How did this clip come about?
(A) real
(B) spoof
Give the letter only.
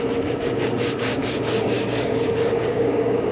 B